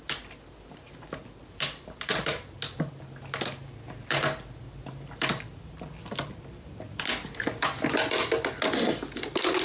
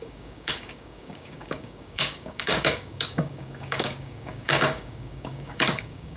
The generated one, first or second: second